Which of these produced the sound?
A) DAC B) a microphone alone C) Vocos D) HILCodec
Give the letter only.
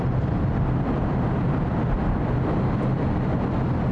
B